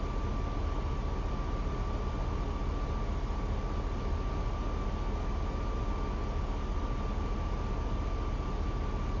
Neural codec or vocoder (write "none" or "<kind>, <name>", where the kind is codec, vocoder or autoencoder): none